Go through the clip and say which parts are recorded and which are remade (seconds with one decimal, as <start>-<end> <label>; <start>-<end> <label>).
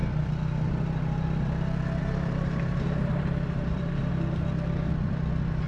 0.0-2.0 recorded; 2.0-4.1 remade; 4.1-5.7 recorded